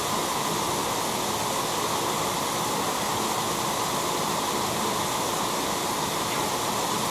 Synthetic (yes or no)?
no